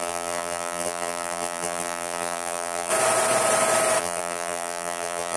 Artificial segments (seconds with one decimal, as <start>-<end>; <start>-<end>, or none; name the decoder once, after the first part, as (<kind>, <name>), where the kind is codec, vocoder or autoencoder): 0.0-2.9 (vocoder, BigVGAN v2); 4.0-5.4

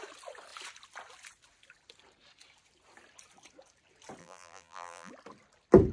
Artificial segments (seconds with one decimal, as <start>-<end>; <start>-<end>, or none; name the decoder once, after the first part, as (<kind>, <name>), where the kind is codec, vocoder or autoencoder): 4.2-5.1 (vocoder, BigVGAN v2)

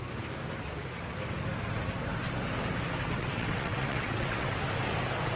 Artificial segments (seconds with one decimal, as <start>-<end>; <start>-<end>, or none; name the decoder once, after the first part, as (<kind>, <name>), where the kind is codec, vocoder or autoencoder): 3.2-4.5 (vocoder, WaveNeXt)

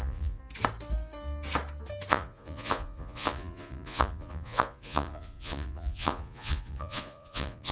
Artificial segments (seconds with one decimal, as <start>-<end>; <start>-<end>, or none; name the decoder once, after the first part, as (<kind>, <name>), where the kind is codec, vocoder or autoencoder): 0.0-0.4 (vocoder, Vocos); 2.1-7.7

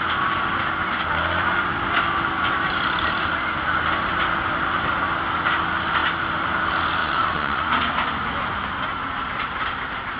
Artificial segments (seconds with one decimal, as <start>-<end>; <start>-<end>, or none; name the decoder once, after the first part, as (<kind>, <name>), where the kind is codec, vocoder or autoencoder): 7.0-7.7 (vocoder, Vocos)

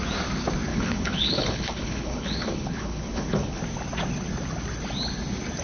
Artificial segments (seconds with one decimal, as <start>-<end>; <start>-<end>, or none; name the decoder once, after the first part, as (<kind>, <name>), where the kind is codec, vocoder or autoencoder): 0.7-3.6 (codec, HILCodec)